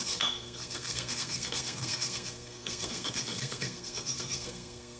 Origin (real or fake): fake